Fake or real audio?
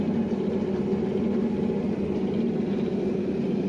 real